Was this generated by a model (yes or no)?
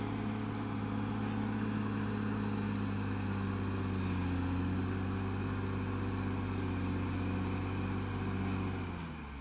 no